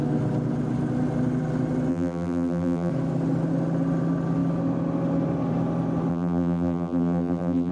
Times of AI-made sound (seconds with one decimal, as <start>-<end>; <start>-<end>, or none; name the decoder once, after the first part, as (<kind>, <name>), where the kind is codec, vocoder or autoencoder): 1.9-2.9 (vocoder, BigVGAN v2); 6.1-7.7